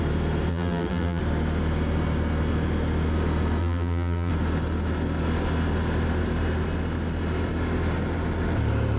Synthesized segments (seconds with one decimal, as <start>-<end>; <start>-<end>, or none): 0.5-1.2; 3.6-4.3